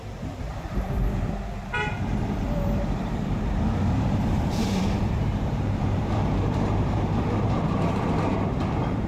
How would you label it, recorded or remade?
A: remade